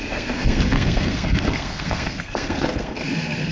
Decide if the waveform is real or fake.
fake